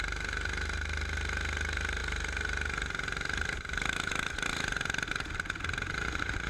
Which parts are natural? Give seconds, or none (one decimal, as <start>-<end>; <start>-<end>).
0.0-6.5